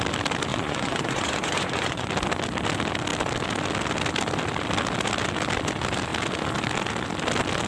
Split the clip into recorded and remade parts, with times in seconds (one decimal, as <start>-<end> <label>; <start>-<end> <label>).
0.0-0.5 recorded; 0.5-2.1 remade; 2.1-7.7 recorded